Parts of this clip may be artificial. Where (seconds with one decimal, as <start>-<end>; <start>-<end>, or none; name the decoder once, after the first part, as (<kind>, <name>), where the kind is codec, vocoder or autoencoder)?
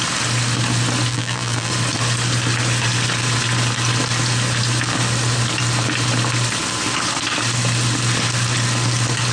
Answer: 1.1-1.7 (vocoder, BigVGAN v2)